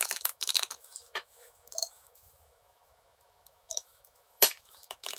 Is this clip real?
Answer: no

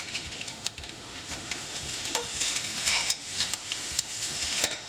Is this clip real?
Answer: no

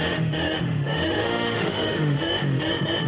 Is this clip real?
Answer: no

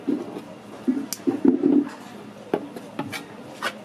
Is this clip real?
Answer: yes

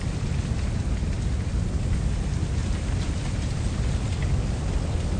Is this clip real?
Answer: yes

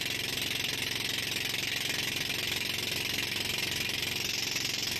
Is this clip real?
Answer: yes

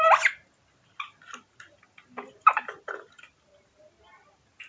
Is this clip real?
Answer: yes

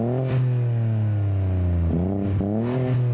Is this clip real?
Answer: yes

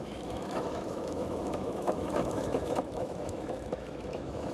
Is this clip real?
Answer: no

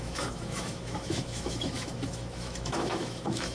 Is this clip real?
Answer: no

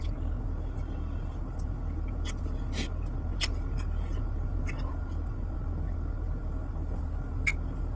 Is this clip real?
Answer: yes